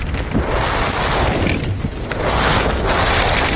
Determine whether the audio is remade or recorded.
recorded